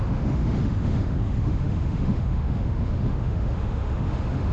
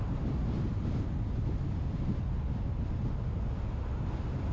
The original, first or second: second